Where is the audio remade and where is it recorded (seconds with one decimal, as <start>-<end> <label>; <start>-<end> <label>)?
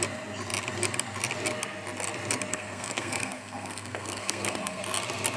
0.0-2.5 recorded; 2.5-4.8 remade; 4.8-5.4 recorded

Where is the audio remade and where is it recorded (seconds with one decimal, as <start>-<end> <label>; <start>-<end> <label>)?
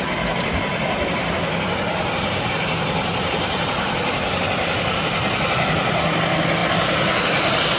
0.0-7.8 recorded